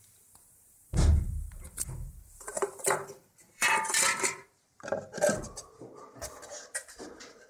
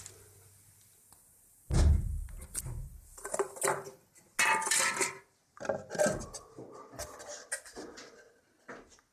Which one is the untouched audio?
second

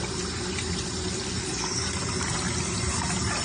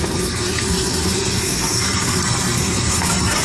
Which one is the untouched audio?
first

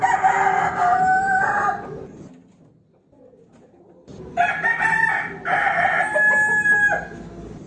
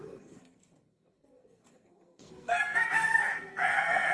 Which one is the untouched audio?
first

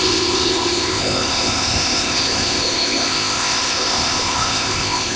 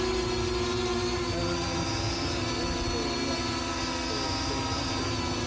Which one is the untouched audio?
second